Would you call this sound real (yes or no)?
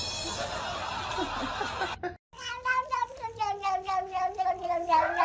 yes